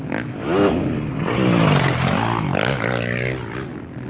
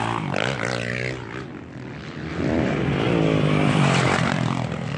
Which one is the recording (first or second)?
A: first